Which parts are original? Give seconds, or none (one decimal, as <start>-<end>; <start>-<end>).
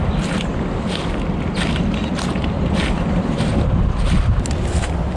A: 0.5-2.3